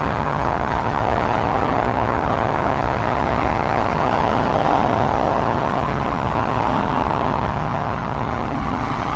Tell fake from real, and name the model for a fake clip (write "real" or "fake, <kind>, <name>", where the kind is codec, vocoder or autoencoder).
fake, vocoder, HiFi-GAN